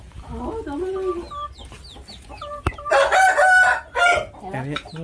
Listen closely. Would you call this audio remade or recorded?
recorded